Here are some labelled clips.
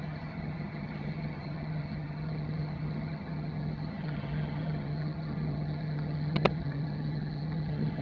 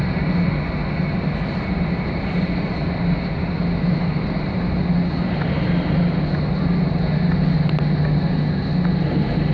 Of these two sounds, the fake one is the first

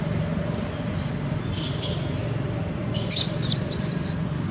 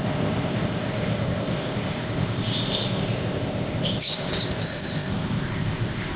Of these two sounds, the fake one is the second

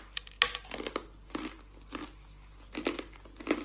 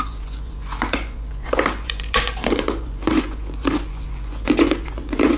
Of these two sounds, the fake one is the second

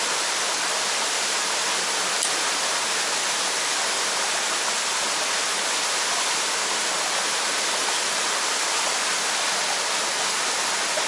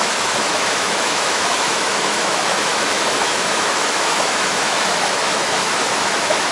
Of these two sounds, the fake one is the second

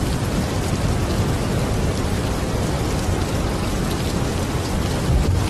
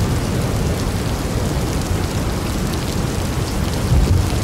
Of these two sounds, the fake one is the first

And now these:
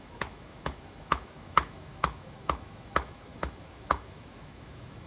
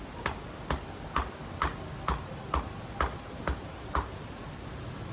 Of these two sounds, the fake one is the first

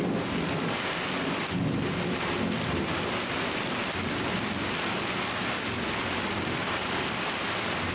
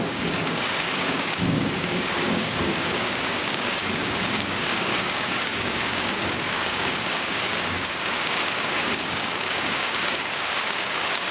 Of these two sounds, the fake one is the second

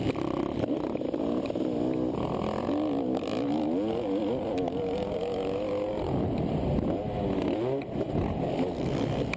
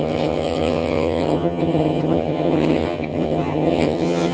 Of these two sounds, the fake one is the second